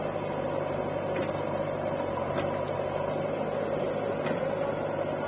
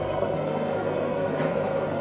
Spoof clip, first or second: second